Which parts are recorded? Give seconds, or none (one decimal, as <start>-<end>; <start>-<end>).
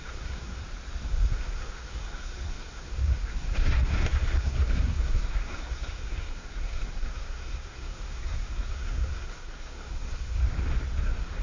0.6-1.3; 10.4-11.0